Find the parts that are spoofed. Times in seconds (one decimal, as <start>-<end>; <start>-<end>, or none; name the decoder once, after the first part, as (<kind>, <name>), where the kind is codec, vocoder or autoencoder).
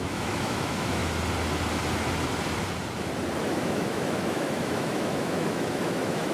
0.0-1.0 (autoencoder, DAC-VAE); 3.4-6.3